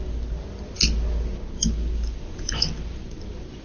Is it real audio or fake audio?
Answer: real